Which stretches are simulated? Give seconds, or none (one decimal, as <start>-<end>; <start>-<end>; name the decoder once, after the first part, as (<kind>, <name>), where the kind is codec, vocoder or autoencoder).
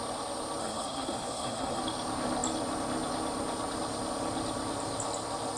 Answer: 0.6-1.8 (codec, SNAC)